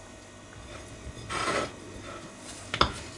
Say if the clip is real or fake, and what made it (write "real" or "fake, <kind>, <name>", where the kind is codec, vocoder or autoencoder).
real